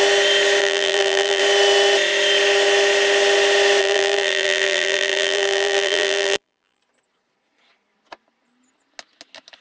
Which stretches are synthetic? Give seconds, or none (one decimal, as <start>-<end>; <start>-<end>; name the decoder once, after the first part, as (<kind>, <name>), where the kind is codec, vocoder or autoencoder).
0.6-1.4 (vocoder, BigVGAN v2); 3.8-6.8